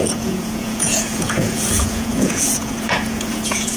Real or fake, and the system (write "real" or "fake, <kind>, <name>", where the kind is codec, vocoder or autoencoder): fake, vocoder, Vocos